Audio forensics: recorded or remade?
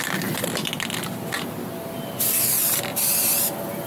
recorded